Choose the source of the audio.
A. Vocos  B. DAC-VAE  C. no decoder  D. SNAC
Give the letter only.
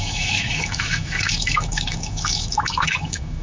B